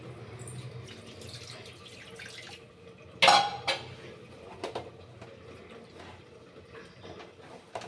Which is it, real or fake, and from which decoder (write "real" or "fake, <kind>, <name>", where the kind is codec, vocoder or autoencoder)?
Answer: real